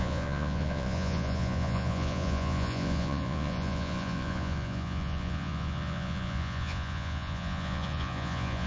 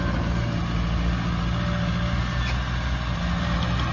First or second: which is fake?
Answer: first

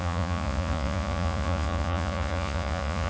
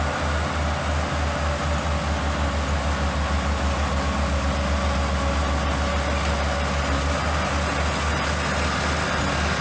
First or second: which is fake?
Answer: first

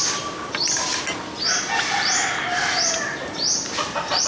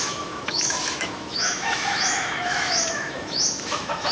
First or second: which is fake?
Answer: second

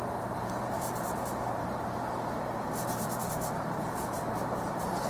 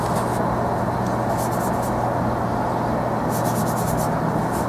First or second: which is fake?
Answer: first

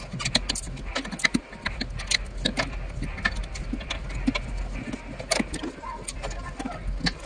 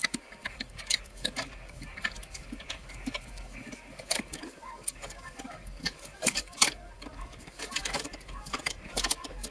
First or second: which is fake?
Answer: second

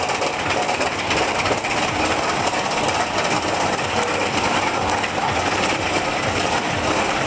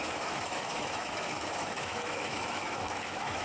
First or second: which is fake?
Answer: second